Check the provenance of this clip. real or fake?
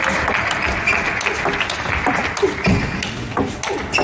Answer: real